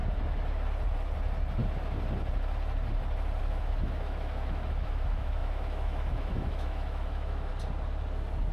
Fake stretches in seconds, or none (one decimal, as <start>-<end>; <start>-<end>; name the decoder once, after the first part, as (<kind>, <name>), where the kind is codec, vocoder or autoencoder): 3.4-7.5 (autoencoder, DAC-VAE)